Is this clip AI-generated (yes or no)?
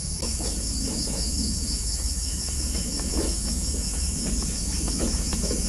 yes